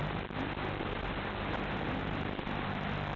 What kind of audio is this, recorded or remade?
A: recorded